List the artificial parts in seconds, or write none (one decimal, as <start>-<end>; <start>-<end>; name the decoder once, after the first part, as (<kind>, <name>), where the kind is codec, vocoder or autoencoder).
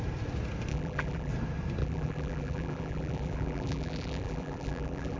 0.7-1.3 (vocoder, BigVGAN v2); 1.8-5.2